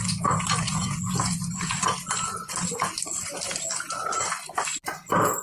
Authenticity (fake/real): real